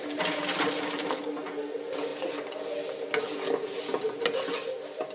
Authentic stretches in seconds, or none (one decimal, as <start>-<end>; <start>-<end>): 0.0-5.1